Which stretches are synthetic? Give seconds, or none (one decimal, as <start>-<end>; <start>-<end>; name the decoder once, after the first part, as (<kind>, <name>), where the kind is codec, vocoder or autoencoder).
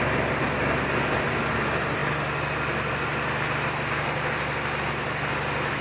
none